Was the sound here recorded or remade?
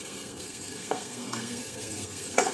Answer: remade